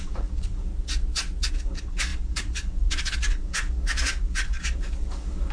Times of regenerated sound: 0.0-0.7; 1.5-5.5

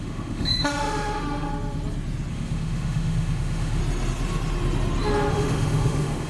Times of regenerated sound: 0.0-1.5; 2.3-3.8; 5.3-6.3

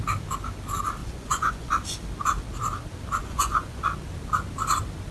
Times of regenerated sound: 1.0-1.7; 3.2-3.8

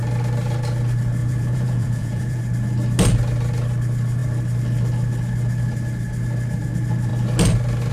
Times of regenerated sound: 1.2-2.4

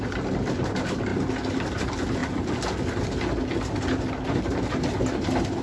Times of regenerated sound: none